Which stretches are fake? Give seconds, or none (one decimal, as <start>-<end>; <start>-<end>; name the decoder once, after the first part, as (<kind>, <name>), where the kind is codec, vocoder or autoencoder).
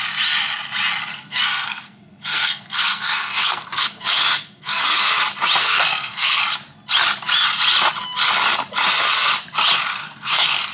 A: 1.1-5.1 (codec, SNAC); 5.6-6.4; 9.9-10.7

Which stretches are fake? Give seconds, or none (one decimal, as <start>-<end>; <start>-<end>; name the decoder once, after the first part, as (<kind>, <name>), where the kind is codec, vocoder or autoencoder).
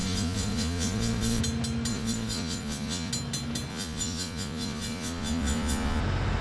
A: 0.0-1.4 (vocoder, Vocos); 1.9-3.1; 3.7-6.0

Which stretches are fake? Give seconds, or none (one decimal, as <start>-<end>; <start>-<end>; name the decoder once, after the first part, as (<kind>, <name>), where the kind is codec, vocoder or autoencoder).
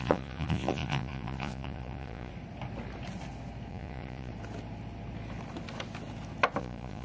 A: 0.0-2.3 (vocoder, Vocos); 3.7-4.3; 6.6-7.0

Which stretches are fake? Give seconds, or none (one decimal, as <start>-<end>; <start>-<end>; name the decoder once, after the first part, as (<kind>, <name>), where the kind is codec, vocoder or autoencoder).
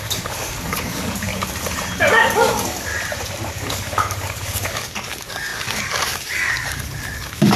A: 0.0-1.3 (codec, DAC); 2.0-2.9; 3.5-7.6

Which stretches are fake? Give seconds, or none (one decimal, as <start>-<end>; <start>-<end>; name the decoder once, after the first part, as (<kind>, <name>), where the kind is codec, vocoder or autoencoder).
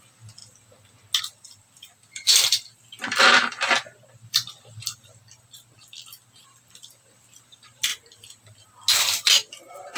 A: 0.0-0.4 (vocoder, BigVGAN v2); 1.2-7.9; 9.0-10.0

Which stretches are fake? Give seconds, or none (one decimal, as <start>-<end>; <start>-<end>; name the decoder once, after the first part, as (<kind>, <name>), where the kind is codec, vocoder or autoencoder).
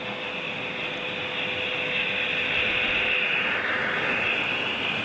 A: none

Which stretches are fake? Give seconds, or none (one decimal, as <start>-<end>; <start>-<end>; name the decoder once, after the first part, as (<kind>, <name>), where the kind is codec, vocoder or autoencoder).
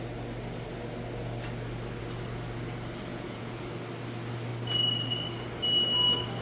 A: 3.1-3.6 (vocoder, Vocos)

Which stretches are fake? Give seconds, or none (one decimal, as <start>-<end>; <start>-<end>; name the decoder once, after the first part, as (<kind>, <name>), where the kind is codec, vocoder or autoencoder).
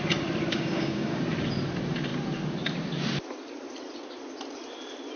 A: 0.5-1.2 (codec, DAC)